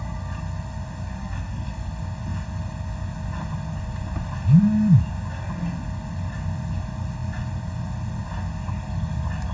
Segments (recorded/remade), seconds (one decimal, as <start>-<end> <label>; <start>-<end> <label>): 0.0-1.2 recorded; 1.2-1.9 remade; 1.9-9.5 recorded